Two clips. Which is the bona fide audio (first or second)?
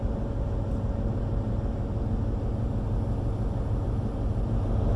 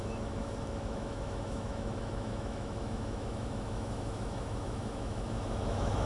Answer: first